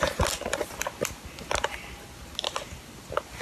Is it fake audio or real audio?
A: real